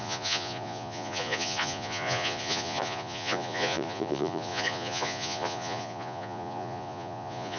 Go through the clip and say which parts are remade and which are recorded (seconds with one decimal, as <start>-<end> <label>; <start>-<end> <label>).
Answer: 0.0-7.6 remade